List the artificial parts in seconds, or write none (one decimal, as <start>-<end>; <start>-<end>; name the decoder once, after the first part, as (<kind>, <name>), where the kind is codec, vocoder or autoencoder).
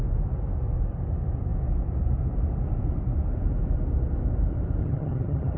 4.8-5.6 (vocoder, HiFi-GAN)